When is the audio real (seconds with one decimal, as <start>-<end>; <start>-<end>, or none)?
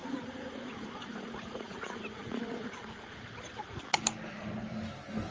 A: 3.2-5.3